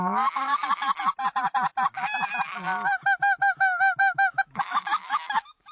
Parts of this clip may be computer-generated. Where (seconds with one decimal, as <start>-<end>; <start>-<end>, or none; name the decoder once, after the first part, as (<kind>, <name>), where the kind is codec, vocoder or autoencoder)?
0.0-0.6 (autoencoder, DAC-VAE); 4.0-5.7